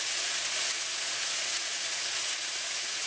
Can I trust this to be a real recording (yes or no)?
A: no